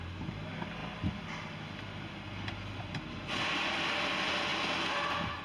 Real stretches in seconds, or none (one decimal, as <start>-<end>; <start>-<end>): 0.0-5.4